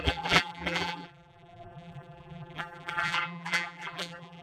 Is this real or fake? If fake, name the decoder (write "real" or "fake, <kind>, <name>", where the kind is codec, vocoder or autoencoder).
fake, vocoder, BigVGAN v2